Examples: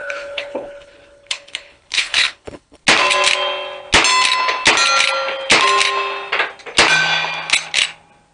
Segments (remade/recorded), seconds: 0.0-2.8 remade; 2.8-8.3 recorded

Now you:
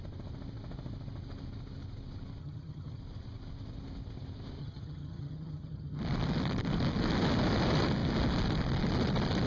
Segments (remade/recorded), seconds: 0.0-2.4 recorded; 2.4-3.0 remade; 3.0-4.6 recorded; 4.6-6.0 remade; 6.0-9.5 recorded

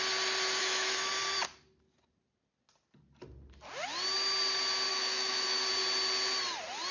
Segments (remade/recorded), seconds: 0.0-0.6 recorded; 0.6-1.1 remade; 1.1-4.9 recorded; 4.9-5.6 remade; 5.6-6.9 recorded

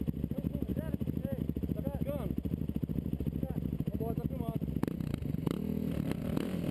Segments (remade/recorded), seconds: 0.0-6.7 recorded

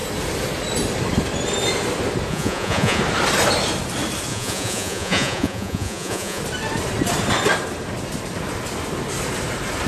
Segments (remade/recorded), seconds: 0.0-2.3 recorded; 2.3-3.0 remade; 3.0-4.3 recorded; 4.3-6.4 remade; 6.4-9.9 recorded

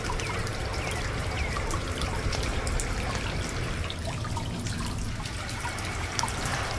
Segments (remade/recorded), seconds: 0.0-0.5 remade; 0.5-1.2 recorded; 1.2-2.5 remade; 2.5-5.8 recorded; 5.8-6.8 remade

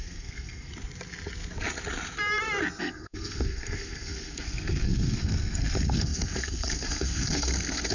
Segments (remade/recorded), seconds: 0.0-0.7 remade; 0.7-2.8 recorded; 2.8-7.9 remade

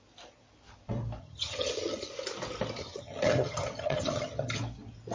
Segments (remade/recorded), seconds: 0.0-1.2 recorded; 1.2-2.1 remade; 2.1-2.8 recorded; 2.8-4.6 remade; 4.6-5.1 recorded